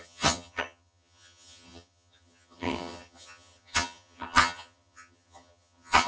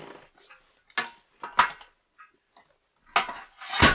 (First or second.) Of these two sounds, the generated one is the first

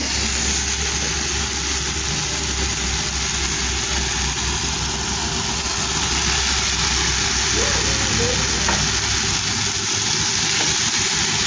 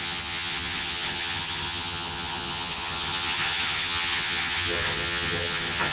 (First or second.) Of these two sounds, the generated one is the second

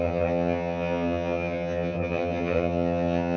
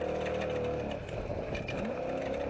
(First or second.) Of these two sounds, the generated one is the first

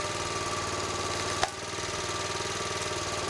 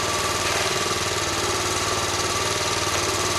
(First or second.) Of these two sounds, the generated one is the second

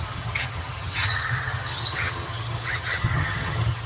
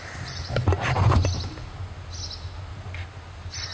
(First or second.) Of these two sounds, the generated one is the first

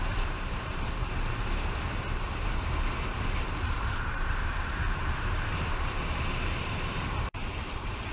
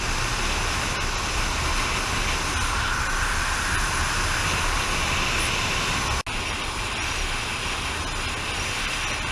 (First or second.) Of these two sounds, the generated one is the first